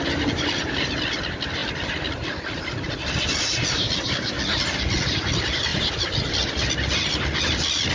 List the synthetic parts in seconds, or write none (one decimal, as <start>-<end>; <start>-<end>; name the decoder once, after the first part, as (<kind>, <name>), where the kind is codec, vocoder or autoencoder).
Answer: none